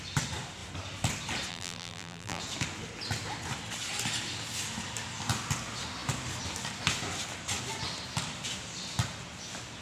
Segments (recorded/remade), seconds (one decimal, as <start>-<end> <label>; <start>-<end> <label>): 0.0-1.5 recorded; 1.5-2.4 remade; 2.4-9.8 recorded